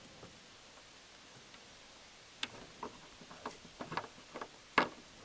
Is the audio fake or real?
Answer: real